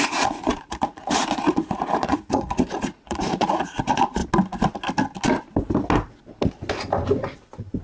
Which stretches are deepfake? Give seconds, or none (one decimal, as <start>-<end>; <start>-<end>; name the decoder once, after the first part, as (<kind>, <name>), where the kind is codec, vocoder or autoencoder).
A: 0.0-4.2 (vocoder, Vocos)